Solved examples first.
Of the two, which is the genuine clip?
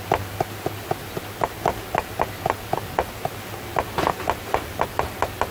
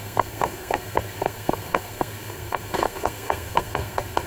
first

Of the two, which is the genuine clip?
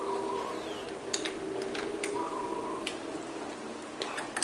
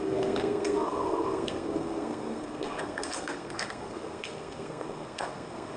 first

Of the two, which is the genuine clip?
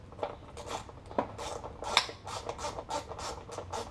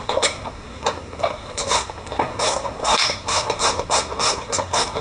first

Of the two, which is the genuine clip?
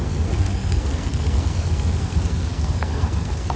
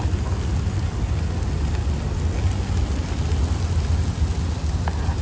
second